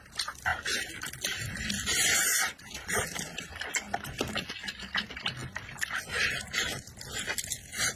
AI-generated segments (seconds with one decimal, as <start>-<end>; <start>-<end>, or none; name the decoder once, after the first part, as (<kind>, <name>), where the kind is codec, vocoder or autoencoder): none